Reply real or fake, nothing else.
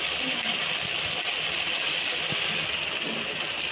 real